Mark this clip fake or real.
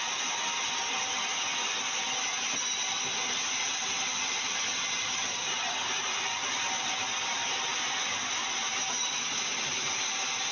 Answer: real